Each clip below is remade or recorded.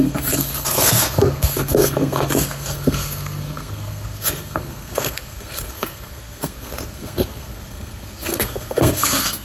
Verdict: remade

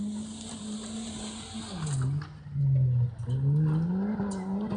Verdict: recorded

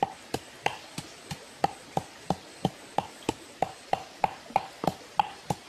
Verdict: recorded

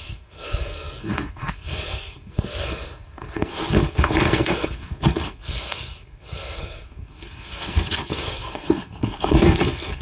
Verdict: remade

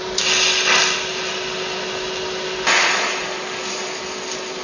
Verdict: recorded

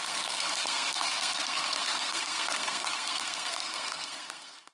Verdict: remade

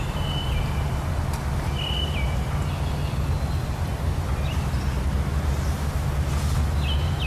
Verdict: recorded